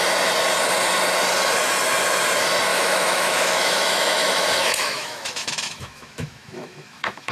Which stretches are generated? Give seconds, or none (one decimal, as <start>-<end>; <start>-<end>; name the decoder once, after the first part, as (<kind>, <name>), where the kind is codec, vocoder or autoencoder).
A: 2.7-7.3 (autoencoder, DAC-VAE)